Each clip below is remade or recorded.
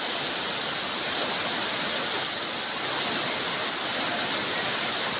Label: recorded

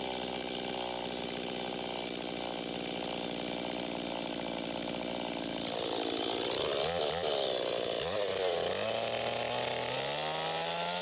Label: recorded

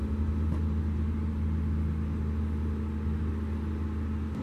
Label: recorded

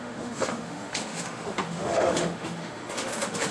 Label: remade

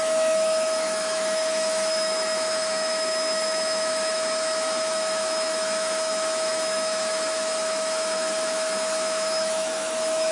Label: remade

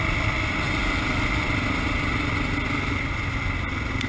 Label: recorded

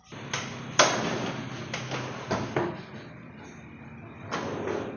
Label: recorded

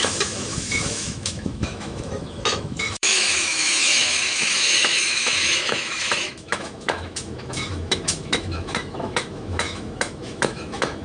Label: remade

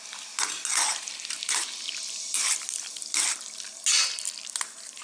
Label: recorded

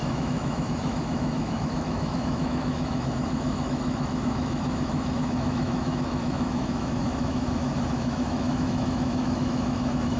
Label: remade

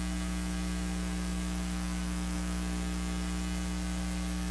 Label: remade